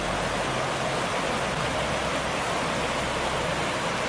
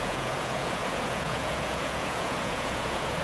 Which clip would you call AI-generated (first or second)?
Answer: second